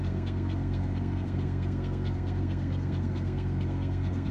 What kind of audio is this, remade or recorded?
remade